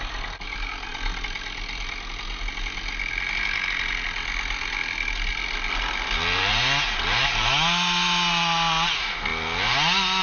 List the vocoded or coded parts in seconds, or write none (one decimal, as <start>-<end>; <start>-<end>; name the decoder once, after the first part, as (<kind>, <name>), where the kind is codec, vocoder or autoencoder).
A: none